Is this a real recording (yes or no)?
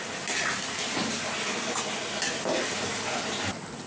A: yes